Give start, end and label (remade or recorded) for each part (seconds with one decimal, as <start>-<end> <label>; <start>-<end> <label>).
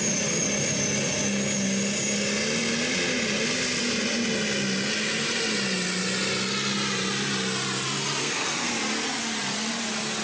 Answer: 0.0-8.2 recorded; 8.2-8.7 remade; 8.7-10.2 recorded